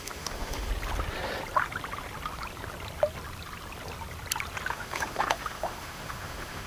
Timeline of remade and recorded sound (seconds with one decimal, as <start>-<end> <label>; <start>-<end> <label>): 0.0-0.7 remade; 0.7-4.7 recorded; 4.7-6.7 remade